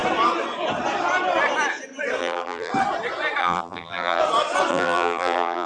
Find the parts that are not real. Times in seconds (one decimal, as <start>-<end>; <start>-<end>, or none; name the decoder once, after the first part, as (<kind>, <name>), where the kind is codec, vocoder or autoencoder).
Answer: 2.2-2.7 (vocoder, BigVGAN v2); 3.4-4.2; 4.7-5.7